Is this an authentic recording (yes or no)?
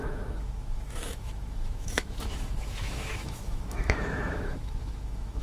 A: no